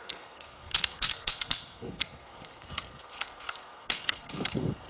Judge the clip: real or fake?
fake